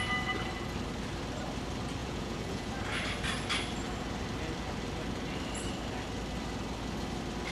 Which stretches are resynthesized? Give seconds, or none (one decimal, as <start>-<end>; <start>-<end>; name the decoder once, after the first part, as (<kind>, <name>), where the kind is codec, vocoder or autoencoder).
2.0-2.7 (vocoder, Vocos)